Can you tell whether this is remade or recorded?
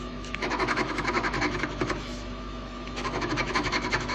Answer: remade